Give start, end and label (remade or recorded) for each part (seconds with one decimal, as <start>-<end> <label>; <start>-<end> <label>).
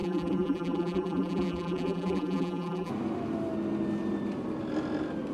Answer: 0.0-2.9 remade; 2.9-5.3 recorded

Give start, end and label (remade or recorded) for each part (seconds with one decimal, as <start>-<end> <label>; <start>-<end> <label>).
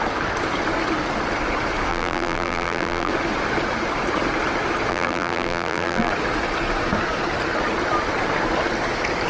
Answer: 0.0-1.9 recorded; 1.9-3.1 remade; 3.1-4.9 recorded; 4.9-6.1 remade; 6.1-9.3 recorded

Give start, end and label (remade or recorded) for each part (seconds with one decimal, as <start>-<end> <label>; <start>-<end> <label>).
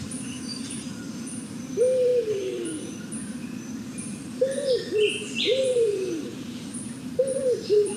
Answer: 0.0-4.9 remade; 4.9-5.6 recorded; 5.6-6.3 remade; 6.3-7.0 recorded; 7.0-8.0 remade